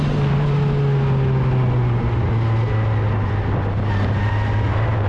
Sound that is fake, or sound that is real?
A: real